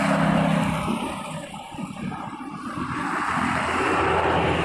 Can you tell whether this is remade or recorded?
recorded